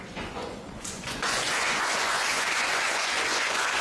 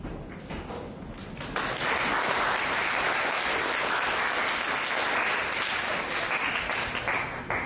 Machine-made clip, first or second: first